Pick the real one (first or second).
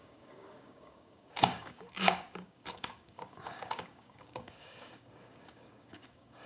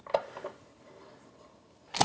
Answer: second